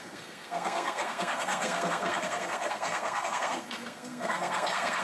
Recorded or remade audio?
remade